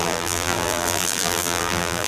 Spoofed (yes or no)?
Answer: yes